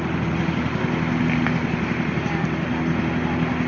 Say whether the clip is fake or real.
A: real